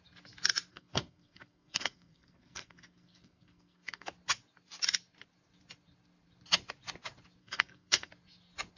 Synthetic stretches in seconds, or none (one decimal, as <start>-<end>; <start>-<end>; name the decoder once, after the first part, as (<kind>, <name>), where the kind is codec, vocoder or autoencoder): 0.7-4.1 (codec, SNAC); 7.4-8.1